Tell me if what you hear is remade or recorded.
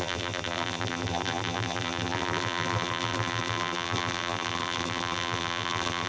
remade